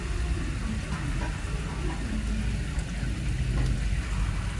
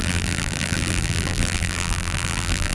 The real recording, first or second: first